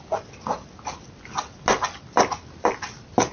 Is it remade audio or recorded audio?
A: recorded